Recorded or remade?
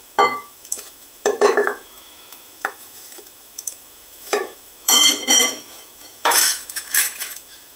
remade